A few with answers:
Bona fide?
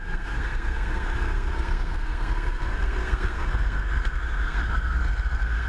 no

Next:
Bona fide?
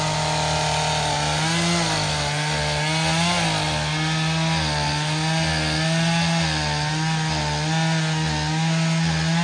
yes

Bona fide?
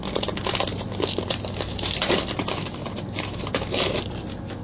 yes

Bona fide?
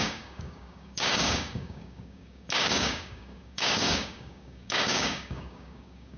no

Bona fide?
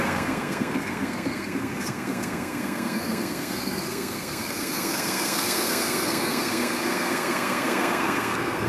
no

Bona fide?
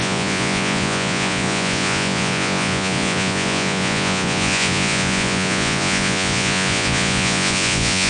no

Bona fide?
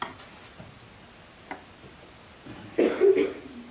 yes